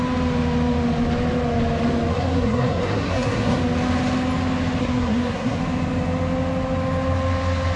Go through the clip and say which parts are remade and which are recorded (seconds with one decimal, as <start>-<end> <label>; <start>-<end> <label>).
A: 0.0-2.1 recorded; 2.1-3.6 remade; 3.6-4.8 recorded; 4.8-5.6 remade; 5.6-7.8 recorded